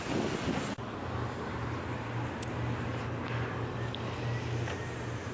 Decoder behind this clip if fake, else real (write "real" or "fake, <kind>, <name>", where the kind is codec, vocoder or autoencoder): real